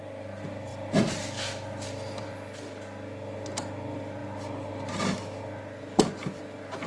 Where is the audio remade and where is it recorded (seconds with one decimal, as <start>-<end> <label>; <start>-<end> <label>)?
0.0-6.9 recorded